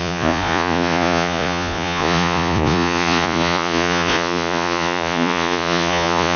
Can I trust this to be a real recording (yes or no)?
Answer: no